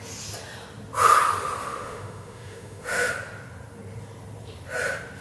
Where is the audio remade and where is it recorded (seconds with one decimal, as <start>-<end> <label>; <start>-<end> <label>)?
0.0-1.6 recorded; 1.6-3.1 remade; 3.1-5.2 recorded